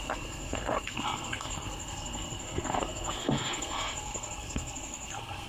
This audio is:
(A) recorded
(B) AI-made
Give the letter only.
B